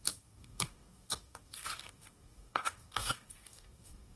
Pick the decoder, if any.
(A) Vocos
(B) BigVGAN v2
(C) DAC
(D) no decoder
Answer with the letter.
C